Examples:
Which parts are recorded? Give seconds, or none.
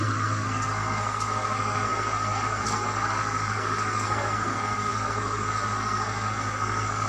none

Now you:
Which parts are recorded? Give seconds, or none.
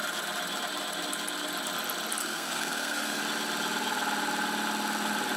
0.0-2.2; 3.2-5.4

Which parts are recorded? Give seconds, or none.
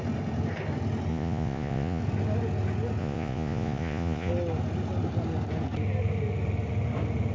0.0-1.1; 2.0-3.0; 4.3-7.3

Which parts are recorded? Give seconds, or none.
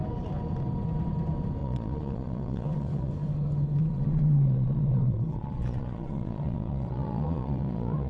0.0-1.6; 3.1-3.8